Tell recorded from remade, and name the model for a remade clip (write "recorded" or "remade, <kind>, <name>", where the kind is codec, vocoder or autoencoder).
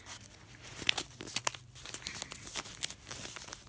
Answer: recorded